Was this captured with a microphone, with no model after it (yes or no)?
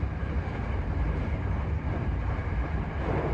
no